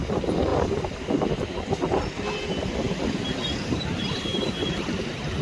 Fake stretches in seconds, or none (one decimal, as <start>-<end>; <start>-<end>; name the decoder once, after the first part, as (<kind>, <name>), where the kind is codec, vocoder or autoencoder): none